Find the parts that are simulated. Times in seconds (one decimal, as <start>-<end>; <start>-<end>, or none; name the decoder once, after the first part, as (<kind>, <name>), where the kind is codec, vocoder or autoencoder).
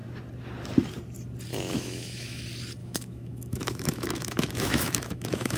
1.5-2.4 (autoencoder, DAC-VAE); 2.8-5.6